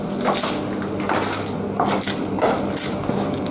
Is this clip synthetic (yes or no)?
no